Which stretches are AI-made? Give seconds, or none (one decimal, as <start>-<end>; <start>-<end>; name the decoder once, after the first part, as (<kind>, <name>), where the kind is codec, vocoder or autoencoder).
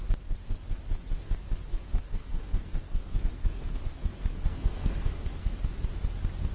1.7-5.6 (codec, SNAC)